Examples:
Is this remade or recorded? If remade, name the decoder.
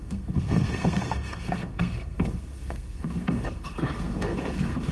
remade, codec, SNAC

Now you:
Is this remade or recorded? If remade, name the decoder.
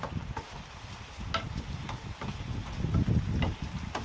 recorded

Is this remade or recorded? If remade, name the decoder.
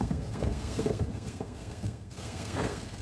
remade, codec, SNAC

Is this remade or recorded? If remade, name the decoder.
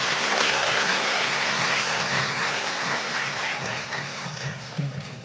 remade, codec, SNAC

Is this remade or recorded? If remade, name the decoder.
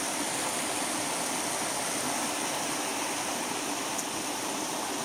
recorded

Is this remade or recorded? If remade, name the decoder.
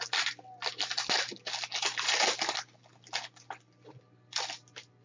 recorded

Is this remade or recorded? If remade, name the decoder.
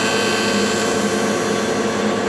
recorded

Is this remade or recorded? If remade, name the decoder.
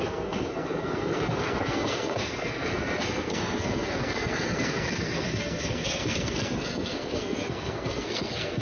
remade, codec, SNAC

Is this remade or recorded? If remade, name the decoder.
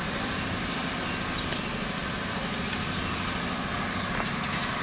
recorded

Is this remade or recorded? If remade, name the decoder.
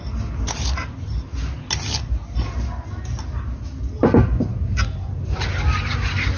recorded